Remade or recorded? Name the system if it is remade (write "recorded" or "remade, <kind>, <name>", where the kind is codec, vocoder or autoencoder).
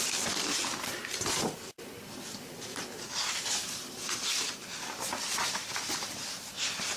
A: recorded